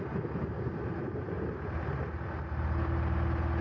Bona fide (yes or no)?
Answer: yes